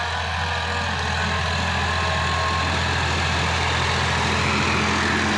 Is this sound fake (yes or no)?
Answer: no